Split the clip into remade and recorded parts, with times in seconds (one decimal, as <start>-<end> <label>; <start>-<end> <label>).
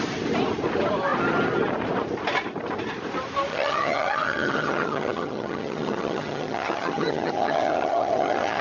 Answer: 0.0-3.5 recorded; 3.5-8.6 remade